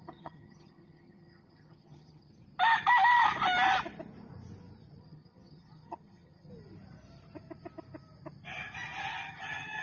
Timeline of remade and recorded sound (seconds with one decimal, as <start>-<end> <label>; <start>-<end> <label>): 0.0-2.3 remade; 2.3-5.0 recorded; 5.0-6.5 remade; 6.5-9.1 recorded; 9.1-9.8 remade